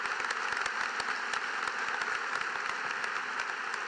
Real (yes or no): yes